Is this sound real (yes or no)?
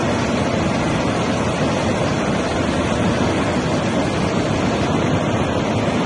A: yes